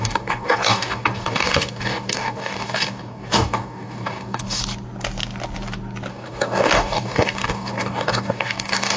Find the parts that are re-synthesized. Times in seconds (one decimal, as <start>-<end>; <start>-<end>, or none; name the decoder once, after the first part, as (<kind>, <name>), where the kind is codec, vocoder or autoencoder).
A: 0.0-4.6 (codec, DAC); 6.1-9.0